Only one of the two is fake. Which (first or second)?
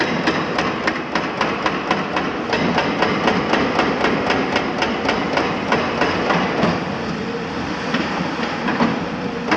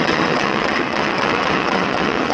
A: second